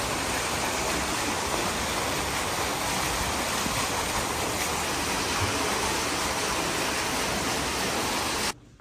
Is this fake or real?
real